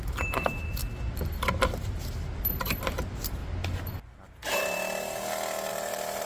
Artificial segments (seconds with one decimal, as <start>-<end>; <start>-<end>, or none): 0.0-0.8; 2.6-3.4; 5.7-6.3